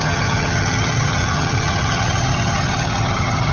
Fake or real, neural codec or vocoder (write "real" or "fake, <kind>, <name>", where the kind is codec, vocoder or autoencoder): fake, vocoder, HiFi-GAN